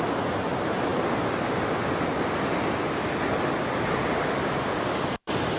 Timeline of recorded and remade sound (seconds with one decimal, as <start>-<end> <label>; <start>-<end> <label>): 0.0-5.6 recorded